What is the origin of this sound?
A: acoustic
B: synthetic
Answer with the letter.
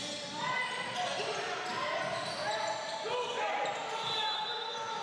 A